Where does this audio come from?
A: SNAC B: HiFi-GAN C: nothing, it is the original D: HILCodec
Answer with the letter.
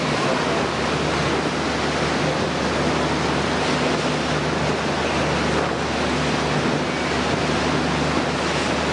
C